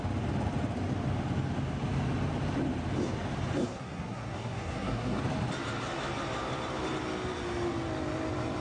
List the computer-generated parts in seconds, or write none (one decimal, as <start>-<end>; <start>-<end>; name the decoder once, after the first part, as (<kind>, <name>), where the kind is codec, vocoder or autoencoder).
3.6-5.2 (codec, SNAC)